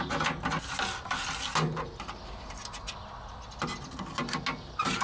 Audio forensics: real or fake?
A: real